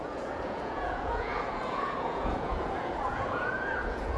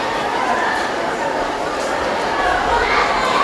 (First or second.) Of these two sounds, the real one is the second